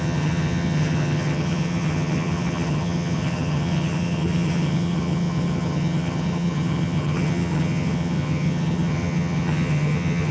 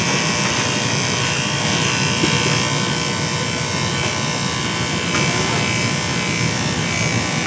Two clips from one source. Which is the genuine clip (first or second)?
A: second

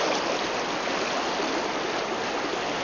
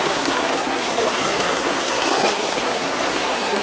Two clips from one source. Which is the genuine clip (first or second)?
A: first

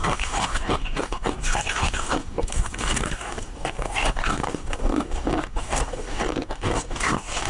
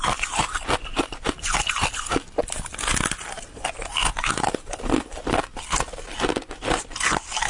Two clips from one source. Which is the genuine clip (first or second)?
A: second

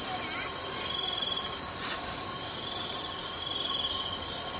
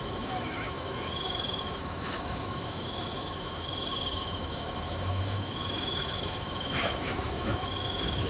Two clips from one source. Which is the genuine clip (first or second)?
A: first